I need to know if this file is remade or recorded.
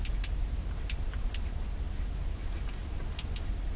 recorded